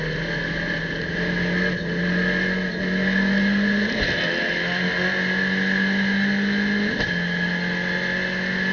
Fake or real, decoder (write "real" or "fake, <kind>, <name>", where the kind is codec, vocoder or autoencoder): real